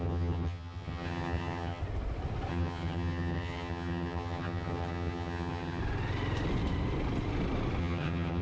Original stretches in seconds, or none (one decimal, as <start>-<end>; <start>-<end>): 1.8-2.5; 5.8-7.8